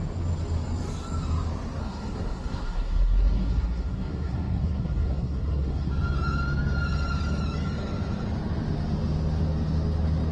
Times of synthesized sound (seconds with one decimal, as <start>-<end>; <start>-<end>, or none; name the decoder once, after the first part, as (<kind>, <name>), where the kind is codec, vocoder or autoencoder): 1.8-5.9 (codec, SNAC)